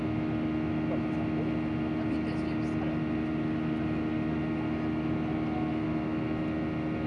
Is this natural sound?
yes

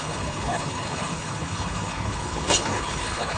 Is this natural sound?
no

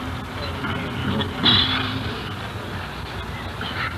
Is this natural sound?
yes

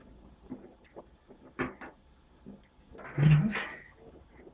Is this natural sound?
yes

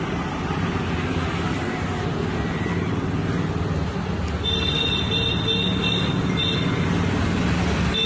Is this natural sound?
yes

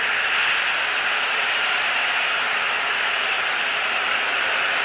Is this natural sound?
yes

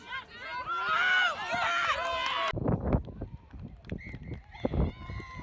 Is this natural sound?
yes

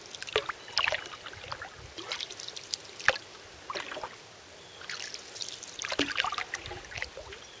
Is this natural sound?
yes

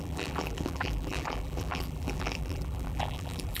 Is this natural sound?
no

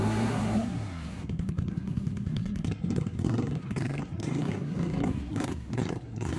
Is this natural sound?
no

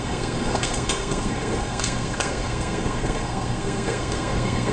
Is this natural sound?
no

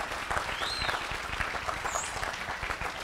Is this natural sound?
no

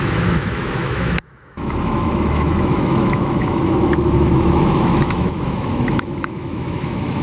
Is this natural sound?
no